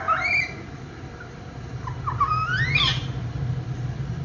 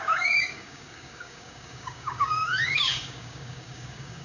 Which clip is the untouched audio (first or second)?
first